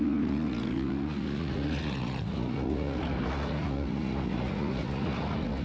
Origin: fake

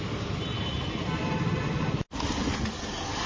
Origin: real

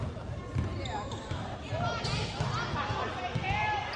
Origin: real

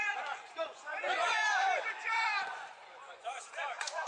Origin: fake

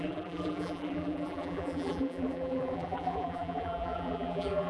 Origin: fake